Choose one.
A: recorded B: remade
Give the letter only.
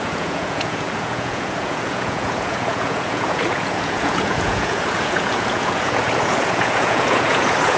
B